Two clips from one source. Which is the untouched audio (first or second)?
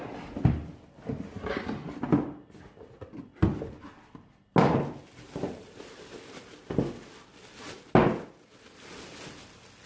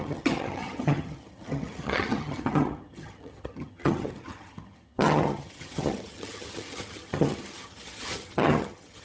first